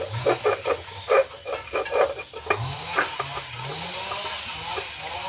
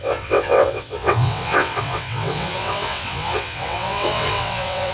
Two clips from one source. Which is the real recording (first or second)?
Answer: first